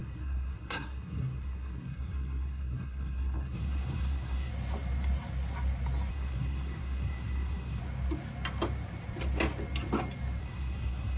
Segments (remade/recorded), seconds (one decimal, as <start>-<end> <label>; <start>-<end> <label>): 0.0-4.5 remade; 4.5-6.1 recorded; 6.1-7.8 remade; 7.8-10.4 recorded; 10.4-11.2 remade